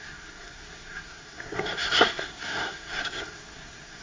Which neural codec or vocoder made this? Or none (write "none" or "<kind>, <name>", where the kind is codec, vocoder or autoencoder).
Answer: codec, SNAC